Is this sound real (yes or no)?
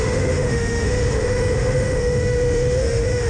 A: no